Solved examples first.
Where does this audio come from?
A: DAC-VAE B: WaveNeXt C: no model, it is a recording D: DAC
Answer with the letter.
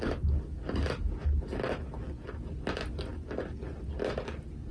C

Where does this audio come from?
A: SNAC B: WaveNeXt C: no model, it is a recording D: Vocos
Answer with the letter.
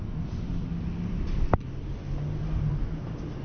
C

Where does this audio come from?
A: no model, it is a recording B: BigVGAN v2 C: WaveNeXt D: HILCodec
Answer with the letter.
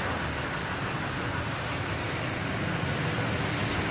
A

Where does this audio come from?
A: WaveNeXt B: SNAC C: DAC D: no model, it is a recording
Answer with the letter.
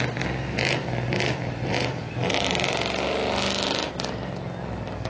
D